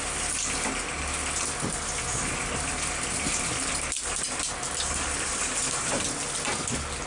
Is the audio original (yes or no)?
yes